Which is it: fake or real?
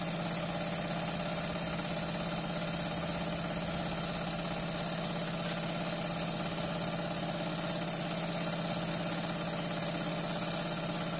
real